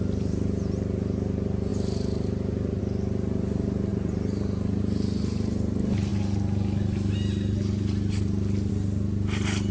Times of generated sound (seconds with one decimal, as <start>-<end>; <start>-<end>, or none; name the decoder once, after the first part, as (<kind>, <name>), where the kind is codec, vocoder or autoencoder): none